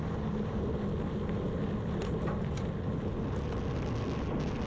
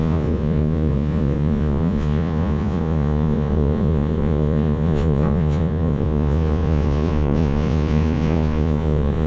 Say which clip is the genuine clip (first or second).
first